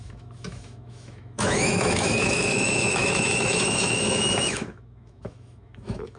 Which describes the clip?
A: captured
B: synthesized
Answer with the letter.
B